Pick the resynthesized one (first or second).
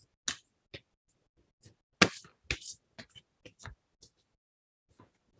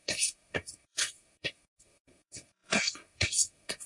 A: second